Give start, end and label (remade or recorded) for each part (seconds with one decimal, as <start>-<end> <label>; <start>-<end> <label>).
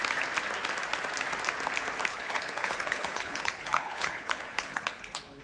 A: 0.0-2.1 recorded; 2.1-5.4 remade